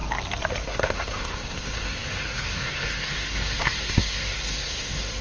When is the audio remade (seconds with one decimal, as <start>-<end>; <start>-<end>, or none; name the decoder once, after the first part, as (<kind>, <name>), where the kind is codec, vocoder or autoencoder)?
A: 0.6-5.2 (codec, SNAC)